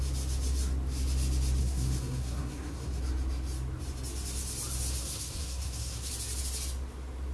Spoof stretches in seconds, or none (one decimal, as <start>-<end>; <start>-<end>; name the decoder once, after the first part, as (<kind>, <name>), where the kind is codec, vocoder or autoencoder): 1.6-3.0 (codec, SNAC); 5.0-6.1